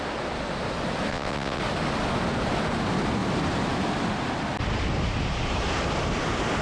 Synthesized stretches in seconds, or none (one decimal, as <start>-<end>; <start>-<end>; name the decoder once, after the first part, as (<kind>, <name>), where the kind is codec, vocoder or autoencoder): 1.1-1.6 (vocoder, WaveNeXt)